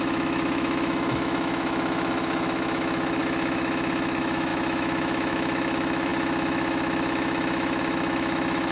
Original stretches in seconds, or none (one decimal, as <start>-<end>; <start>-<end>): none